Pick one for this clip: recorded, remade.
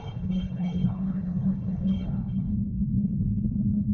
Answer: remade